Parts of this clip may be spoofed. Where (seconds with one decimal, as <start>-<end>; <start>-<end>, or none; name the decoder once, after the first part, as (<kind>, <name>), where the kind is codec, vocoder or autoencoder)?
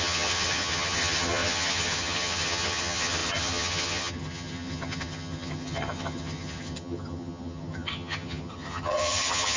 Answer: 0.0-9.6 (vocoder, HiFi-GAN)